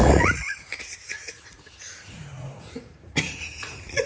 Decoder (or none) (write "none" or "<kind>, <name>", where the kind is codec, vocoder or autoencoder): vocoder, Vocos